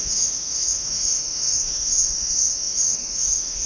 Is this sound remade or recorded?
remade